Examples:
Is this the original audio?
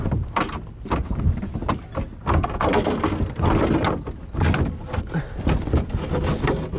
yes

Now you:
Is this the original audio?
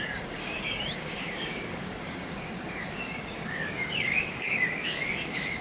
no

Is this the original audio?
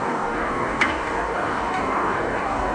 no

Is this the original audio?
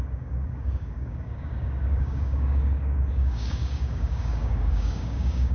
no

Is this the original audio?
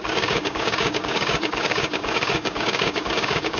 no